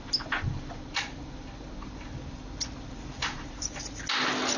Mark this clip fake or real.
real